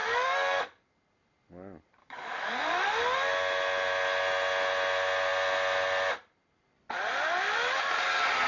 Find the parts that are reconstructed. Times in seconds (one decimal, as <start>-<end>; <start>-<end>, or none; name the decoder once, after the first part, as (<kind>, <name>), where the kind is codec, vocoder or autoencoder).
0.0-0.6 (codec, DAC); 2.0-2.6